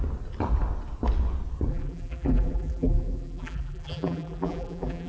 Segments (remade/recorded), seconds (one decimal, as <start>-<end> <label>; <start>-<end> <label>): 0.0-1.7 recorded; 1.7-5.1 remade